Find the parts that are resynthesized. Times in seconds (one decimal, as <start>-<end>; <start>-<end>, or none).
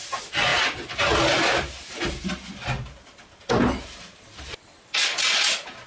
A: none